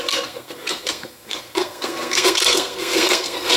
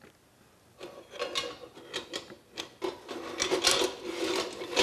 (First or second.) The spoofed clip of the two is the first